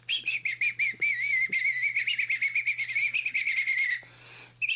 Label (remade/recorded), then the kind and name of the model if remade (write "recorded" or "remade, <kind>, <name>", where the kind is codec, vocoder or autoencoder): recorded